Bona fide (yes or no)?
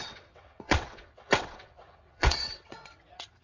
no